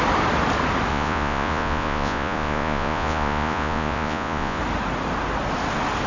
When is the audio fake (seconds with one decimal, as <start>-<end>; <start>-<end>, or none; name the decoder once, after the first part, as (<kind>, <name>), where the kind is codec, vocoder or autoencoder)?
0.9-4.6 (vocoder, Vocos)